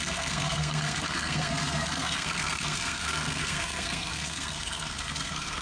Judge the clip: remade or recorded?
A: remade